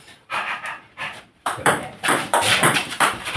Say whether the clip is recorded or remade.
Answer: remade